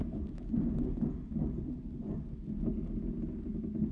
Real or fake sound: real